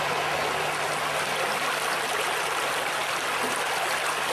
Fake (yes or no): no